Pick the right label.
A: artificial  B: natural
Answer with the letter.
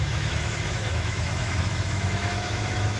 A